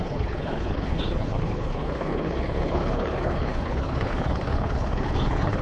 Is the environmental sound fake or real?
fake